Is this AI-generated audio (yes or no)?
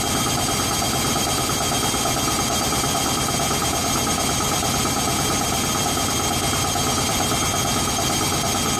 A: yes